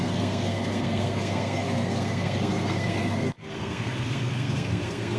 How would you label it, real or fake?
fake